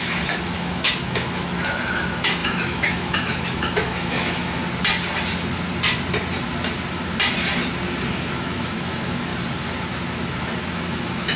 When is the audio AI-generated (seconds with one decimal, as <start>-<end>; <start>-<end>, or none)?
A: 0.0-4.6; 8.1-9.3; 10.6-11.4